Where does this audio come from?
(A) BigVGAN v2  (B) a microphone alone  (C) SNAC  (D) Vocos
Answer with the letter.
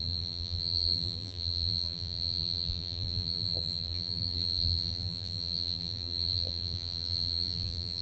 A